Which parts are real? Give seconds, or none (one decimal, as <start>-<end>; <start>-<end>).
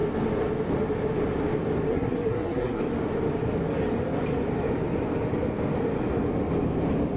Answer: 0.0-1.9; 2.8-7.2